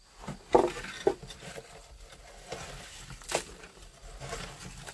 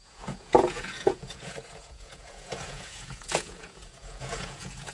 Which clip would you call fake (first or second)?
second